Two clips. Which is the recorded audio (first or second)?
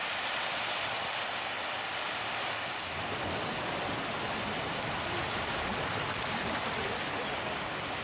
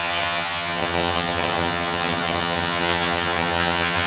first